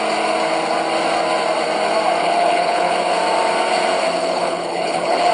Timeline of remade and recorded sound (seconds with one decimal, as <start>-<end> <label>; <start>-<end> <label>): 0.0-2.2 recorded; 2.2-2.9 remade; 2.9-4.2 recorded; 4.2-5.3 remade